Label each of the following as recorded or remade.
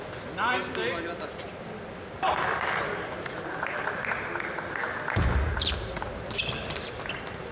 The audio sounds recorded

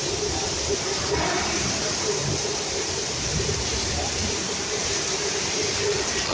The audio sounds remade